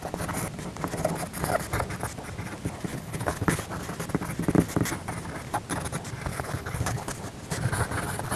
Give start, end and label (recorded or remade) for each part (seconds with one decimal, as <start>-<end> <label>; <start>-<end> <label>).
0.0-2.9 recorded; 2.9-3.6 remade; 3.6-6.3 recorded; 6.3-7.1 remade; 7.1-8.4 recorded